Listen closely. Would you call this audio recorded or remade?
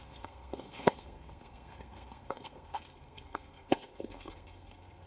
remade